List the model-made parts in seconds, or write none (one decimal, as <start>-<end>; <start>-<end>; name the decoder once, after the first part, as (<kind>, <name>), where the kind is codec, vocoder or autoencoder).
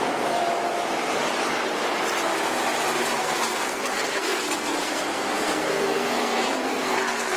0.0-0.4 (codec, SNAC); 3.2-7.4